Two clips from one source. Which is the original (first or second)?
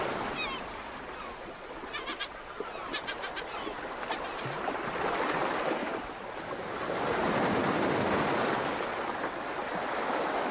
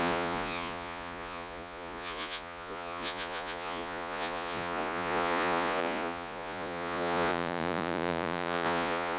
first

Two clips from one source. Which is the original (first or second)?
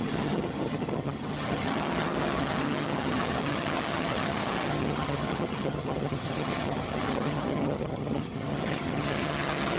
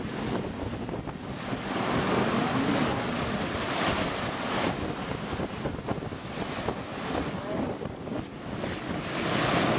second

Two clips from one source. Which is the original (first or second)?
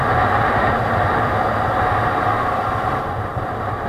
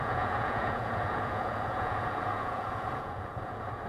first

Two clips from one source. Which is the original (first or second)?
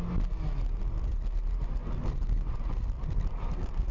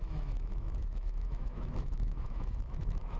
first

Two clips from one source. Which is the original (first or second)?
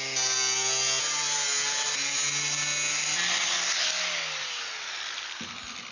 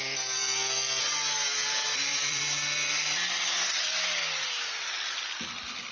first